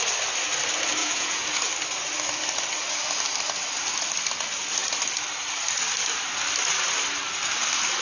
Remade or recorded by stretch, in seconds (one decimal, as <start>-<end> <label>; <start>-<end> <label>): 0.0-1.0 recorded; 1.0-1.7 remade; 1.7-8.0 recorded